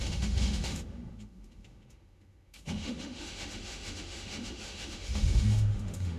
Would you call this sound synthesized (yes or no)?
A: yes